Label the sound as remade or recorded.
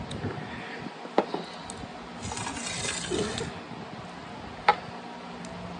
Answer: recorded